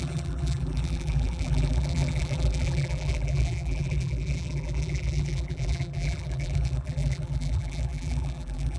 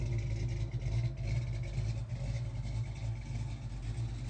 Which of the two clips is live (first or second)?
second